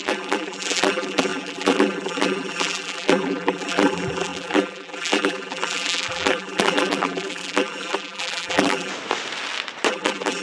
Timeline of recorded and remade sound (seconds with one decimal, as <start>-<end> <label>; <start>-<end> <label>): 0.0-8.9 remade; 8.9-9.9 recorded; 9.9-10.4 remade